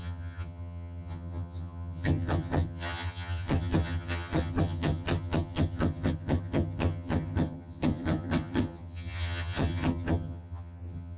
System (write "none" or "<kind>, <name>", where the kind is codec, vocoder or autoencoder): vocoder, HiFi-GAN